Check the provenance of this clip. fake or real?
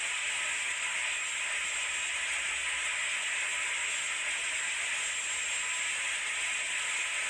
real